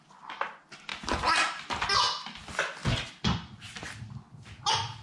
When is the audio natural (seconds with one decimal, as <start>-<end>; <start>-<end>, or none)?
0.0-5.0